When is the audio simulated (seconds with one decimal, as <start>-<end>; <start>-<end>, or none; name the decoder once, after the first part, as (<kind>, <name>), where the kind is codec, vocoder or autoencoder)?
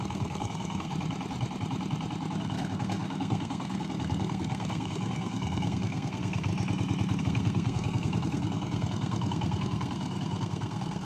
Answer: 0.0-0.9 (codec, SNAC); 2.4-6.5; 7.2-11.0